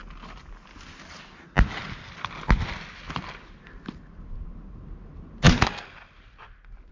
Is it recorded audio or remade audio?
recorded